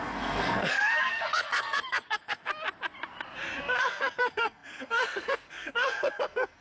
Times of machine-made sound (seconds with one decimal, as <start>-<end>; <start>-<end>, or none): 0.0-2.5; 3.8-6.6